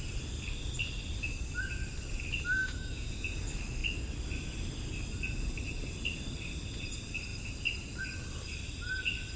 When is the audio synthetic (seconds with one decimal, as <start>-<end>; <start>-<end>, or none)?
2.6-3.1